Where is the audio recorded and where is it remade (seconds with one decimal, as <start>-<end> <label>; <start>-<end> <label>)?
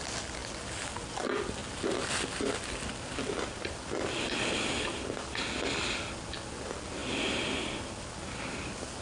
0.0-9.0 recorded